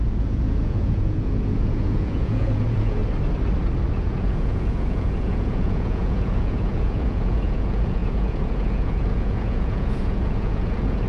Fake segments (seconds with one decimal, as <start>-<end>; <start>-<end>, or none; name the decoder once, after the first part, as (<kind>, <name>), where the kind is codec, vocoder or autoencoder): 0.0-3.0 (vocoder, Vocos); 3.9-11.1